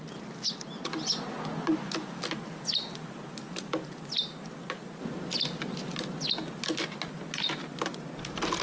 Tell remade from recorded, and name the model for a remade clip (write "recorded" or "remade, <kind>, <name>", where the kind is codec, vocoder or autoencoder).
recorded